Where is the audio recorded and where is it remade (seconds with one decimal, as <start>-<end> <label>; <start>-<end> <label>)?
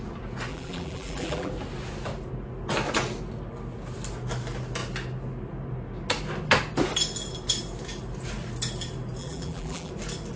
0.0-0.5 recorded; 0.5-1.5 remade; 1.5-9.2 recorded; 9.2-9.9 remade; 9.9-10.4 recorded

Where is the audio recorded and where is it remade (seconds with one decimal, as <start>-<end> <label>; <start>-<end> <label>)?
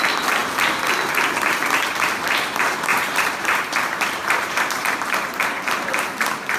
0.0-2.9 recorded; 2.9-3.8 remade; 3.8-4.2 recorded; 4.2-6.6 remade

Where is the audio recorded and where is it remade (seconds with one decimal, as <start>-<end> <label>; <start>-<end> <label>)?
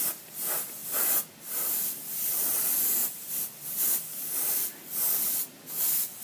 0.0-6.2 recorded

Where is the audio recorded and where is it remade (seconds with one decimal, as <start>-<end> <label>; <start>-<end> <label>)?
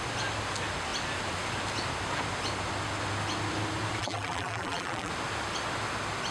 0.0-4.0 recorded; 4.0-5.1 remade; 5.1-6.3 recorded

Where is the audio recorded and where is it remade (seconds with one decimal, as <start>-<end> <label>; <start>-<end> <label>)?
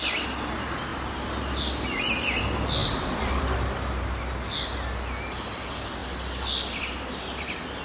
0.0-2.8 recorded; 2.8-3.7 remade; 3.7-7.8 recorded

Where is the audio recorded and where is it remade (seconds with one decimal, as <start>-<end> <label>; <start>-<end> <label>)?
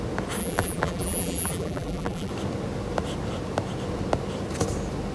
0.0-0.4 recorded; 0.4-2.3 remade; 2.3-5.1 recorded